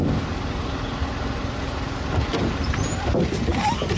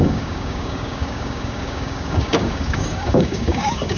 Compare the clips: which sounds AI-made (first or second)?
second